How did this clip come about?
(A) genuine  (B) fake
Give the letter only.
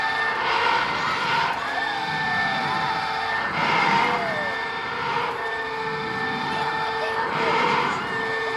A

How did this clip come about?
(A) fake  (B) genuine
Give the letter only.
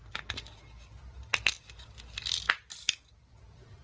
B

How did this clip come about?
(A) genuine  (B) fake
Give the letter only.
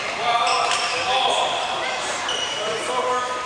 A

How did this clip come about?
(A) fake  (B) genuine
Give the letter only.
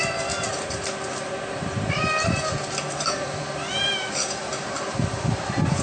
A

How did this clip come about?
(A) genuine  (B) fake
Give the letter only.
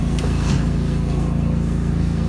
B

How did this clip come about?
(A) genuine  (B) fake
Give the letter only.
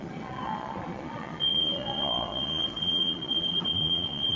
B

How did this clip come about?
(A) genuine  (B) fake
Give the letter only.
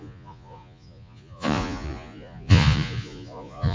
B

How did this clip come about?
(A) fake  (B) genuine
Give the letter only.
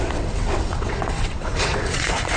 A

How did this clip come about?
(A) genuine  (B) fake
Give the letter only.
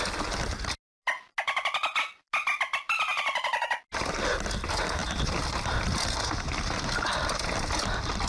A